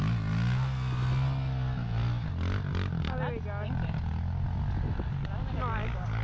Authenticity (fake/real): real